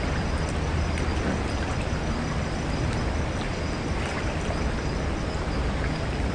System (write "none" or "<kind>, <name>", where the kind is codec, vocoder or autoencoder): none